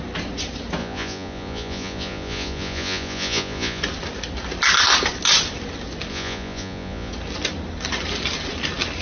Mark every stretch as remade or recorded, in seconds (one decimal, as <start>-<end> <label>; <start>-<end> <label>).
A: 0.0-0.8 recorded; 0.8-3.8 remade; 3.8-6.1 recorded; 6.1-7.1 remade; 7.1-9.0 recorded

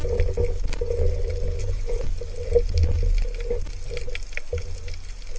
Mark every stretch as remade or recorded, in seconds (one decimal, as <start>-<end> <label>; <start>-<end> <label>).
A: 0.0-1.6 recorded; 1.6-2.1 remade; 2.1-5.4 recorded